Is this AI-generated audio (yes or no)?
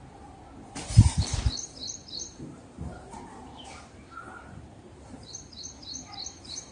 yes